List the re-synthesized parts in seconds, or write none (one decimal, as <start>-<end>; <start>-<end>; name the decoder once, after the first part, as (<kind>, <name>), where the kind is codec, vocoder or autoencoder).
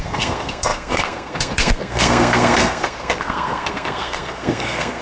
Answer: 0.0-5.0 (codec, SNAC)